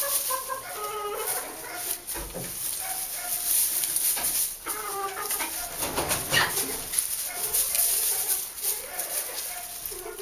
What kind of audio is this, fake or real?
real